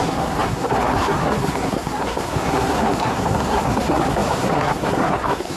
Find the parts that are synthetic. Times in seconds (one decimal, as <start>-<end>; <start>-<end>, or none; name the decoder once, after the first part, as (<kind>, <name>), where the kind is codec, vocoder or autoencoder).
0.0-5.6 (codec, SNAC)